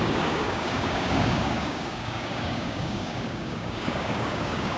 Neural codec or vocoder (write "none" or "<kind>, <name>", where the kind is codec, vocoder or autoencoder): codec, DAC